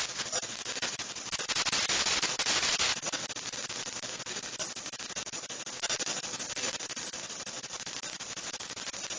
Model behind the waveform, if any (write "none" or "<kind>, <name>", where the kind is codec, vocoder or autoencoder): none